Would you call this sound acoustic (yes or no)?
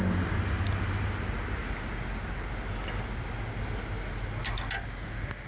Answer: yes